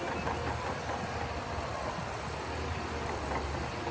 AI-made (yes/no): no